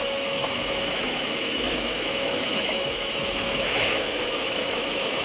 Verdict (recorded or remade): remade